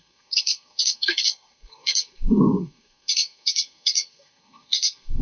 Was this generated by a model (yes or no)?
yes